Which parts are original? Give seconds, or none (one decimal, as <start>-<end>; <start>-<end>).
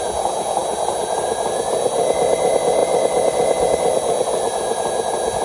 0.0-5.4